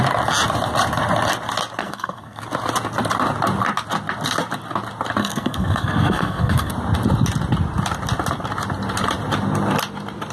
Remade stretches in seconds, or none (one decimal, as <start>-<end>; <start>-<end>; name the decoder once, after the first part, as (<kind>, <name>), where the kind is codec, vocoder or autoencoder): 1.8-2.4 (codec, SNAC); 5.2-6.7